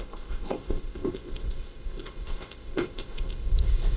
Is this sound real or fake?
fake